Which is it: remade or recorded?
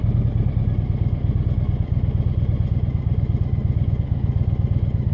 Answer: recorded